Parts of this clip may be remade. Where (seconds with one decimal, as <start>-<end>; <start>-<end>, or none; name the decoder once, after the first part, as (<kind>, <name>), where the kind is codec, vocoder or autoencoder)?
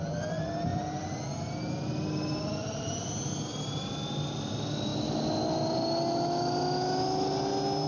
none